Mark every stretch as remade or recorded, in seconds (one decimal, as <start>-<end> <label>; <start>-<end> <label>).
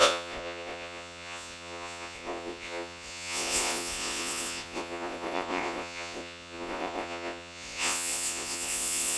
0.0-9.2 remade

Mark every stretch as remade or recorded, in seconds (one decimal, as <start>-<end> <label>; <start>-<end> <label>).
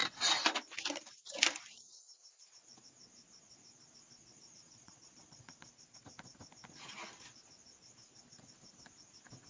0.0-4.2 recorded; 4.2-5.7 remade; 5.7-9.5 recorded